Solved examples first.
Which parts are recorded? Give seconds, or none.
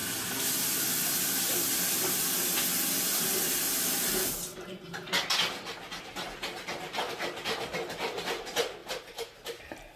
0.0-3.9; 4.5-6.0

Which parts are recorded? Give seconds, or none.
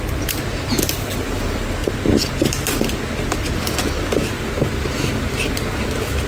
0.0-6.3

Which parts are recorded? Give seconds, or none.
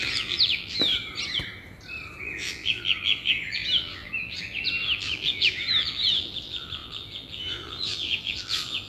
0.9-2.2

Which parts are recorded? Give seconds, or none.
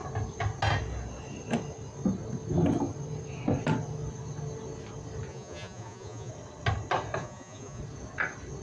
0.0-5.3; 6.3-7.2; 7.8-8.6